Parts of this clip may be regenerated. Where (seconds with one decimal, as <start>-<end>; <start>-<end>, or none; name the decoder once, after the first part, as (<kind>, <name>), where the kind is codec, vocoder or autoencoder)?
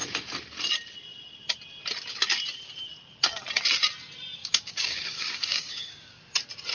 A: 4.4-6.2 (codec, DAC)